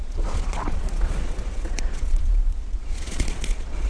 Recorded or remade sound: remade